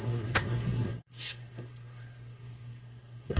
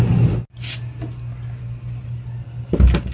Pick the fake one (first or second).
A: first